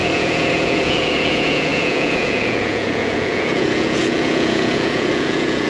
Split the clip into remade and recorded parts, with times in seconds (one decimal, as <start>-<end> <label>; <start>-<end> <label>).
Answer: 0.0-5.7 remade